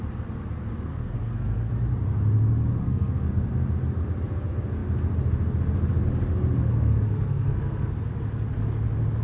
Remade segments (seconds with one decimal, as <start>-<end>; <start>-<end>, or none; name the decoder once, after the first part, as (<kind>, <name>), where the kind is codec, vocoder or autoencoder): 0.7-1.7 (codec, SNAC); 2.8-3.5; 6.7-7.9